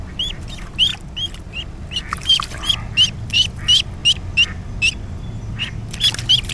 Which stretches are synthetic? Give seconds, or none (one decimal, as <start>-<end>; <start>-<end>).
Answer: none